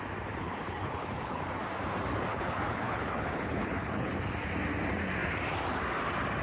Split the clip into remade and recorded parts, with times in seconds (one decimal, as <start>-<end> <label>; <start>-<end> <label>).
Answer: 0.0-0.4 recorded; 0.4-1.4 remade; 1.4-2.3 recorded; 2.3-4.2 remade; 4.2-6.4 recorded